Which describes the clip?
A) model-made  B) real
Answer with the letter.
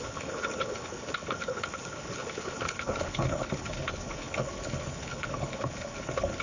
A